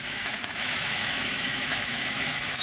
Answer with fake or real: fake